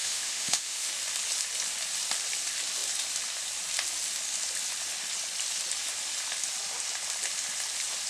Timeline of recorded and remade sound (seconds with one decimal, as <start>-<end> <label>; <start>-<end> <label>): 0.0-0.9 remade; 0.9-8.1 recorded